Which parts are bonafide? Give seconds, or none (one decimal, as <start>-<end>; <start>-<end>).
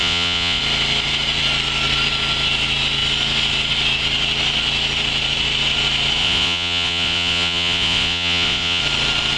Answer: 0.6-6.2; 8.8-9.4